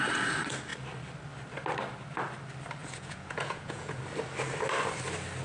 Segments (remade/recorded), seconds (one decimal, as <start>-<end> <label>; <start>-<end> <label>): 0.0-2.8 recorded; 2.8-4.0 remade; 4.0-5.4 recorded